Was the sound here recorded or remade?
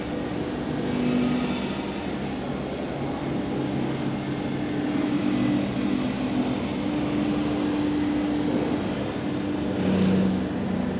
recorded